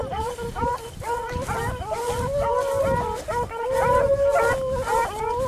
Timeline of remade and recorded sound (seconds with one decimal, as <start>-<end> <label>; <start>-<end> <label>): 0.0-5.5 recorded